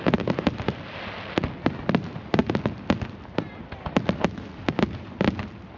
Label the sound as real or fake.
real